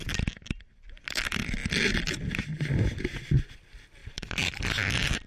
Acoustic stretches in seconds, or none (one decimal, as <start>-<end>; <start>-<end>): 0.0-5.3